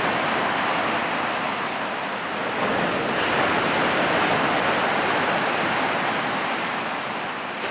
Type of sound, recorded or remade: recorded